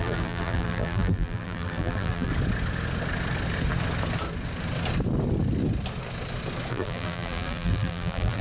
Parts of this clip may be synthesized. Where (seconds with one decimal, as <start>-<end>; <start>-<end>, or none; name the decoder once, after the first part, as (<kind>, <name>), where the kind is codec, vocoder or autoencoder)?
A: 0.0-2.3 (vocoder, BigVGAN v2); 6.7-8.4